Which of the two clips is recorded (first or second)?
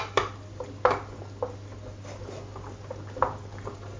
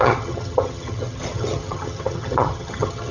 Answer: first